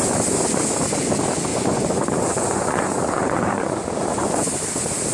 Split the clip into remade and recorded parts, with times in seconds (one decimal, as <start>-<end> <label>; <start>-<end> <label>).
0.0-1.5 recorded; 1.5-4.6 remade; 4.6-5.1 recorded